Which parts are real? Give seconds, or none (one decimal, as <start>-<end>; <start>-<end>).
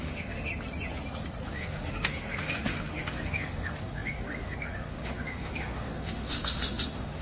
0.5-1.5